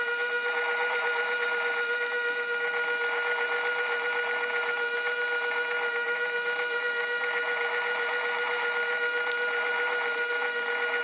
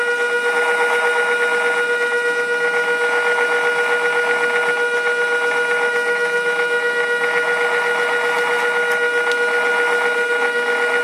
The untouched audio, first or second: second